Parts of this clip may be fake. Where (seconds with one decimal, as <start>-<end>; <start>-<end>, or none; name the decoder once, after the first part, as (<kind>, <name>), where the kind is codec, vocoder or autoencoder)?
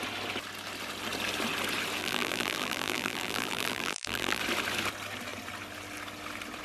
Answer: 2.0-4.4 (vocoder, BigVGAN v2)